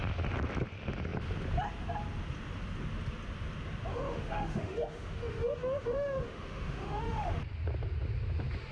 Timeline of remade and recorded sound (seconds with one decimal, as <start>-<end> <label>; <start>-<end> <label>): 0.0-3.9 recorded; 3.9-7.3 remade; 7.3-8.7 recorded